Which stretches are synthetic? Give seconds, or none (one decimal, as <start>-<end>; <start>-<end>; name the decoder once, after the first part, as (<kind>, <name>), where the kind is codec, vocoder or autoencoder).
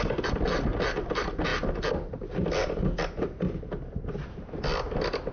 none